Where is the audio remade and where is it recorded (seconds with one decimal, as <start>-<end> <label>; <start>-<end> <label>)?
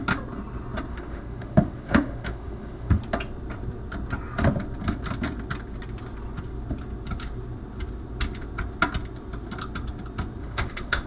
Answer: 0.0-0.9 recorded; 0.9-3.0 remade; 3.0-10.4 recorded; 10.4-11.1 remade